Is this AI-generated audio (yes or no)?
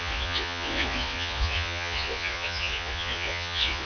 yes